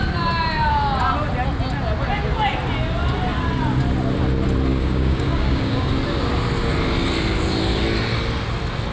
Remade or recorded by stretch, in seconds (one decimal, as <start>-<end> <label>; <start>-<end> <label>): 0.0-4.7 recorded; 4.7-5.9 remade; 5.9-8.9 recorded